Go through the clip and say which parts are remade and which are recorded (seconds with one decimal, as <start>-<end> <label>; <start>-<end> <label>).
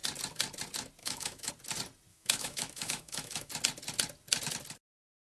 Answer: 0.0-1.0 recorded; 1.0-1.5 remade; 1.5-2.1 recorded; 2.1-3.5 remade; 3.5-5.2 recorded